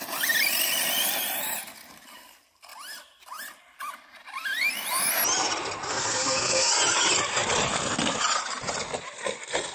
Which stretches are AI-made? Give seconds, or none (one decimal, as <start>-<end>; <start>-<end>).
5.9-6.7